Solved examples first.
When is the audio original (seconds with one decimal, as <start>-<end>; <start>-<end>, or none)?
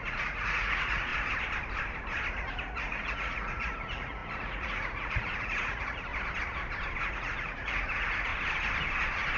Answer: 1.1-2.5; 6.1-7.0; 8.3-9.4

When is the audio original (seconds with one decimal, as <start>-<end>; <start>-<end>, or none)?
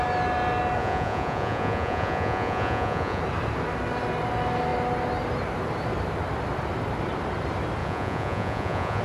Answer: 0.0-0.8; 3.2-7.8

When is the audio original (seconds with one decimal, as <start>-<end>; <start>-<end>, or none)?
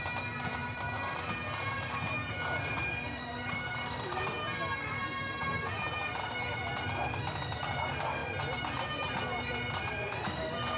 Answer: 0.0-10.8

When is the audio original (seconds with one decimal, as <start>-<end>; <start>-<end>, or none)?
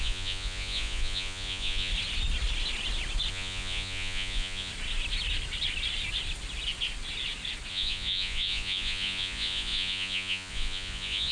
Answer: 1.9-3.3; 4.7-7.7